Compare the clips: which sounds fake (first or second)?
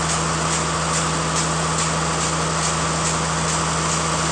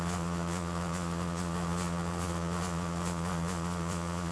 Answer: second